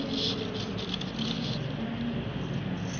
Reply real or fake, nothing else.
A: real